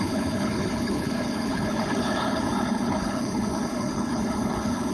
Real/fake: fake